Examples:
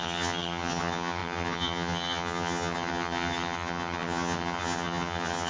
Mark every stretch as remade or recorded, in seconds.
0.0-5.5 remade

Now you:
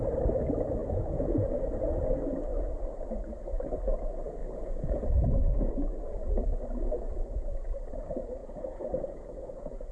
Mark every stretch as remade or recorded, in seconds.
0.0-0.8 recorded; 0.8-1.6 remade; 1.6-4.4 recorded; 4.4-5.7 remade; 5.7-8.4 recorded; 8.4-9.9 remade

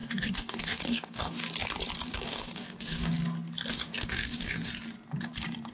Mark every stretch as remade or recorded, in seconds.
0.0-1.4 remade; 1.4-2.1 recorded; 2.1-3.1 remade; 3.1-3.7 recorded; 3.7-4.7 remade; 4.7-5.7 recorded